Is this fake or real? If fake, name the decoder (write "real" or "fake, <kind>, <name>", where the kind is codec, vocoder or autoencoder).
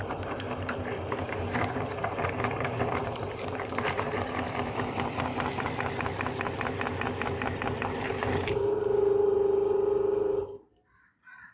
fake, vocoder, BigVGAN v2